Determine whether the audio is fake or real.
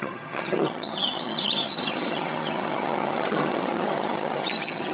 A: fake